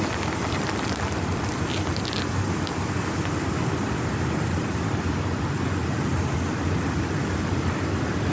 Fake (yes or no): no